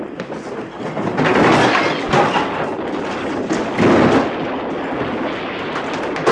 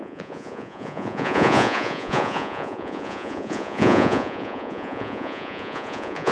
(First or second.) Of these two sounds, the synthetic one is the second